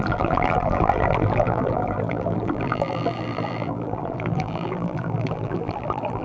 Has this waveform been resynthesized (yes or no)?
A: yes